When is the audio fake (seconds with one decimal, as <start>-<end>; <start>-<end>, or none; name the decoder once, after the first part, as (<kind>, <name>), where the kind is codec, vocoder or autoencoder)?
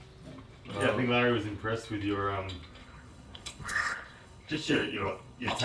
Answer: 2.8-5.6 (codec, HILCodec)